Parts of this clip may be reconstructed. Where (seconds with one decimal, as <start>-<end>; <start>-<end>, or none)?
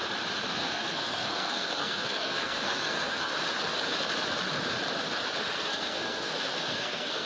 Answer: 0.5-3.3; 5.4-7.3